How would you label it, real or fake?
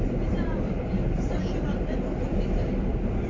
real